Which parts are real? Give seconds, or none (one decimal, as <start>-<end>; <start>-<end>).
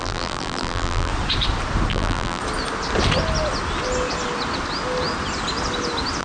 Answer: 1.1-1.9; 2.4-6.2